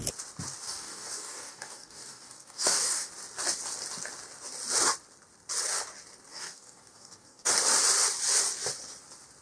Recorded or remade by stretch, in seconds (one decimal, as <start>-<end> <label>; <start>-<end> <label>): 0.0-0.6 recorded; 0.6-3.1 remade; 3.1-6.3 recorded; 6.3-7.5 remade; 7.5-9.4 recorded